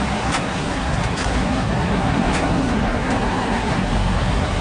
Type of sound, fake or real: fake